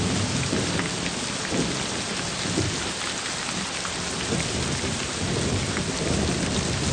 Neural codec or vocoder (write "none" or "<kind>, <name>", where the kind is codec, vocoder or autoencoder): none